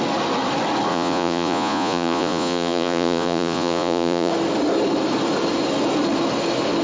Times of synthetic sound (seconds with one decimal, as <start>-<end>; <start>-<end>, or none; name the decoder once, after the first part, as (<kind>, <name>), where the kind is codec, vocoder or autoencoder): 0.9-4.3 (vocoder, Vocos)